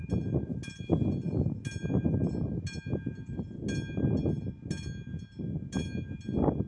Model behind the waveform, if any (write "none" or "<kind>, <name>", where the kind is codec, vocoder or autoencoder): none